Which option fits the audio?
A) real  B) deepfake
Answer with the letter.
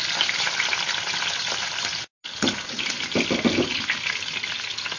A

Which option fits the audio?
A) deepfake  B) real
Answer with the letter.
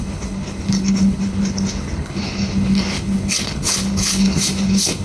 A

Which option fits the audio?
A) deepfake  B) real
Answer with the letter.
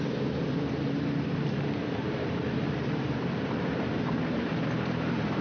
A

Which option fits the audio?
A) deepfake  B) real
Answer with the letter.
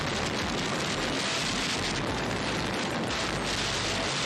B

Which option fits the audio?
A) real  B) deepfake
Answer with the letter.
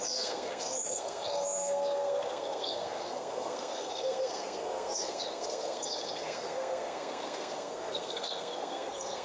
B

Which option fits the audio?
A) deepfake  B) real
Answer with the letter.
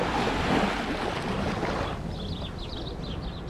B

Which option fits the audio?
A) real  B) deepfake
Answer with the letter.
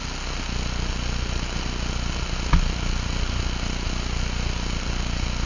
A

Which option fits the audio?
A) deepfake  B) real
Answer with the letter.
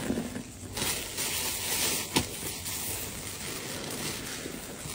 B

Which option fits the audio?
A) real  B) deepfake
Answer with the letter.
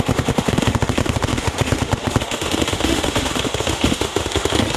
B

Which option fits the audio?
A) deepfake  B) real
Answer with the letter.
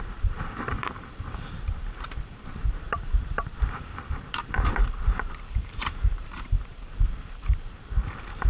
A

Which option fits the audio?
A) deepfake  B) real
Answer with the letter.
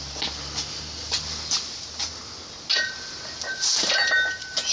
B